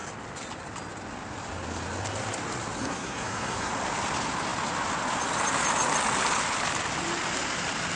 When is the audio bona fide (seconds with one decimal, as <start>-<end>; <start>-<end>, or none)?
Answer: 0.0-2.8; 3.7-7.9